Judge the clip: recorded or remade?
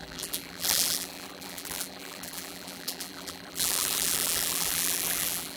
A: remade